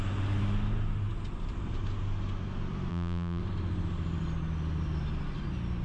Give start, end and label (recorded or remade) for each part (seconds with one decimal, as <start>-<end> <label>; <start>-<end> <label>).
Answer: 0.0-2.9 recorded; 2.9-3.4 remade; 3.4-5.8 recorded